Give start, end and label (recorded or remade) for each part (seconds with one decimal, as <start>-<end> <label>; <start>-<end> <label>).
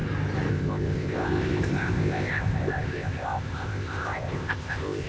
0.0-0.5 recorded; 0.5-5.1 remade